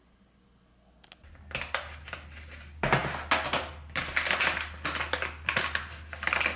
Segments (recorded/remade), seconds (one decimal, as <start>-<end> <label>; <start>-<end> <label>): 0.0-6.6 recorded